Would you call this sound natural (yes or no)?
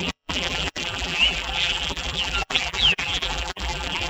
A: no